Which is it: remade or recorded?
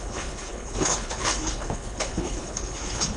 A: remade